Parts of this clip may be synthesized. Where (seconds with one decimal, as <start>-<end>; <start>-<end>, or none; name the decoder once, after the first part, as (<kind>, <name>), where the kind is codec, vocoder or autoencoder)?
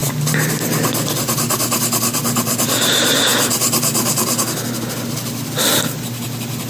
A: none